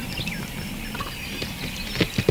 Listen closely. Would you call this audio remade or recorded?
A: recorded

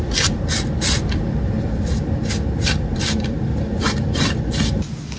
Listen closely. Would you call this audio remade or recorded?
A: remade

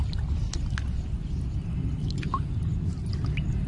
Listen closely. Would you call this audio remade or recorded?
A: recorded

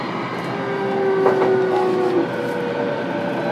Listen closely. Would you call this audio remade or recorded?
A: recorded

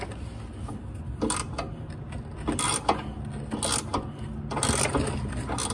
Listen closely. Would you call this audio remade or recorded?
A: recorded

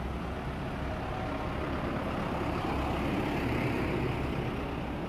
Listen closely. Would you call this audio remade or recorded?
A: recorded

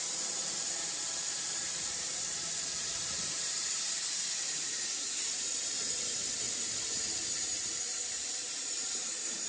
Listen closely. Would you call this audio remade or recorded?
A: remade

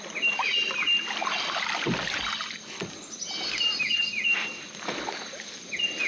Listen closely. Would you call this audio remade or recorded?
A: recorded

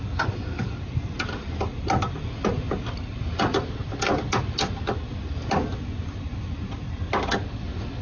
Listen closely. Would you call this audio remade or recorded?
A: recorded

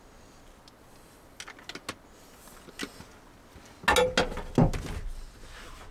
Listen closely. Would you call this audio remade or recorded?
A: recorded